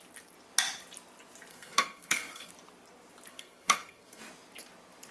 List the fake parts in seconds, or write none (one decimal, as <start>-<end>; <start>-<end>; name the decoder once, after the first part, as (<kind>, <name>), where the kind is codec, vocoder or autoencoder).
1.5-2.5 (codec, SNAC); 3.3-4.2